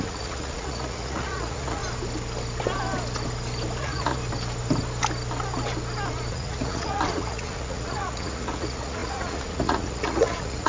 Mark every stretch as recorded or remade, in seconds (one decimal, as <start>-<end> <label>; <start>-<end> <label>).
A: 0.0-1.8 remade; 1.8-3.8 recorded; 3.8-4.2 remade; 4.2-6.3 recorded; 6.3-10.7 remade